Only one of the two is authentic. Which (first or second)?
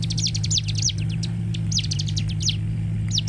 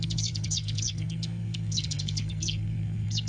first